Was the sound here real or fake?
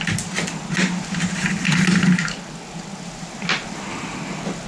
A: real